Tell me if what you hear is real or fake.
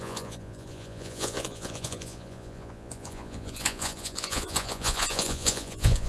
fake